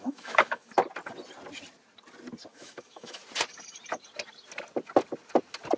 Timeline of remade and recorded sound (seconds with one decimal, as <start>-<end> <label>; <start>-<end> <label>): 0.0-0.8 remade; 0.8-2.5 recorded; 2.5-3.2 remade; 3.2-5.8 recorded

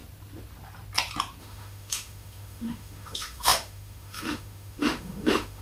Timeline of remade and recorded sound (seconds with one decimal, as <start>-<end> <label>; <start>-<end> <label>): 0.0-1.4 recorded; 1.4-5.6 remade

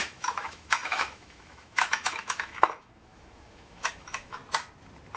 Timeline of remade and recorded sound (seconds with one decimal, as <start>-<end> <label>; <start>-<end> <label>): 0.0-4.4 remade; 4.4-5.2 recorded

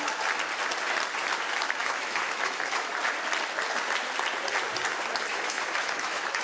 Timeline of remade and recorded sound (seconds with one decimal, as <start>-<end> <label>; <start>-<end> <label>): 0.0-1.8 recorded; 1.8-2.9 remade; 2.9-5.3 recorded; 5.3-6.4 remade